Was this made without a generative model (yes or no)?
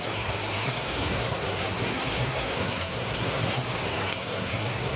no